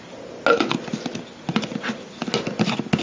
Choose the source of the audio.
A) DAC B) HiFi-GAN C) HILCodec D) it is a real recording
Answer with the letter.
D